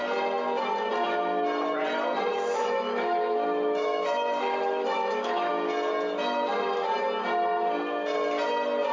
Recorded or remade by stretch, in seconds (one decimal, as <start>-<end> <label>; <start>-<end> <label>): 0.0-2.3 recorded; 2.3-5.5 remade; 5.5-8.9 recorded